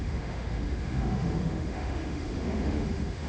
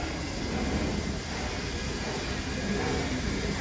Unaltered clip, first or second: second